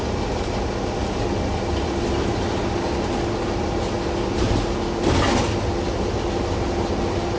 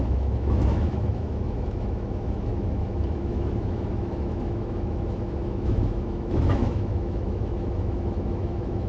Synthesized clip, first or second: second